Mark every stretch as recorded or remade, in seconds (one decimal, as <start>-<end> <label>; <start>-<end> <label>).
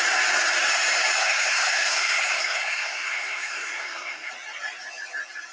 0.0-1.2 recorded; 1.2-4.3 remade; 4.3-5.5 recorded